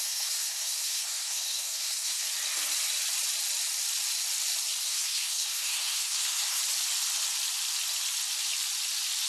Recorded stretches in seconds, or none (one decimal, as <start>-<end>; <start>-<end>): 2.3-4.8; 6.6-9.3